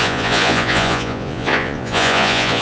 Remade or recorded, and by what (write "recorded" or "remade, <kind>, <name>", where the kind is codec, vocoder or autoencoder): remade, vocoder, Vocos